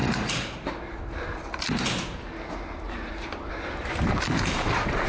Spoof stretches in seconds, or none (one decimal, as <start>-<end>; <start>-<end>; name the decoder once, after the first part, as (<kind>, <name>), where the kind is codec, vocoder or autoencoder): none